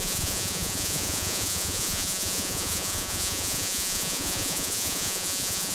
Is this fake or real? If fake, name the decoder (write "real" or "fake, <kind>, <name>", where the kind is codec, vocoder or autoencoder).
fake, vocoder, Vocos